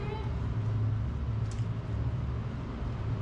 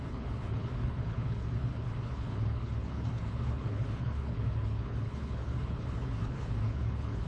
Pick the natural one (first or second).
first